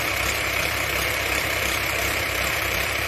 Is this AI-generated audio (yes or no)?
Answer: yes